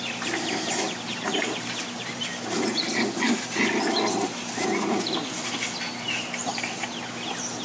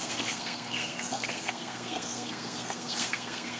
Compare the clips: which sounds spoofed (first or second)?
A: second